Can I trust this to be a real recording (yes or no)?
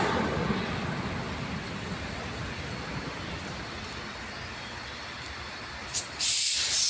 yes